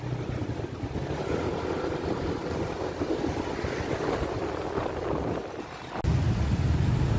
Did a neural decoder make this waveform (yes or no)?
no